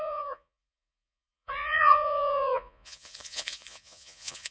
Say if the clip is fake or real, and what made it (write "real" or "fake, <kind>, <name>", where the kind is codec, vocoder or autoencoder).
fake, vocoder, Vocos